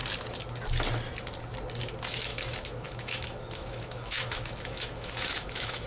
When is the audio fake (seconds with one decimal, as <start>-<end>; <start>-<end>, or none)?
2.3-5.9